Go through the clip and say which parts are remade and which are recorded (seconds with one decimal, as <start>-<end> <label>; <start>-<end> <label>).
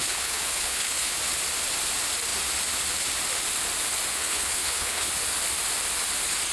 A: 0.0-1.2 remade; 1.2-4.1 recorded; 4.1-5.1 remade; 5.1-6.5 recorded